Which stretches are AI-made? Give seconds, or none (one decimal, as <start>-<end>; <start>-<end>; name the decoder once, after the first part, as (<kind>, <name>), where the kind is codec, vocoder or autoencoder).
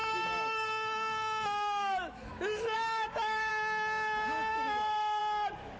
0.0-3.5 (autoencoder, DAC-VAE); 4.5-5.2